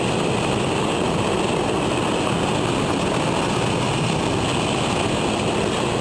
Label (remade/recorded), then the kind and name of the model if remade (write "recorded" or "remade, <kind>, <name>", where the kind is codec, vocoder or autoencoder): recorded